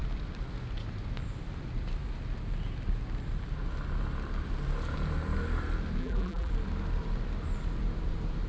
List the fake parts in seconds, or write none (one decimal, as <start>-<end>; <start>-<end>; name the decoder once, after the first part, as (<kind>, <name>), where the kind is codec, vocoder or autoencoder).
6.0-6.5 (vocoder, BigVGAN v2)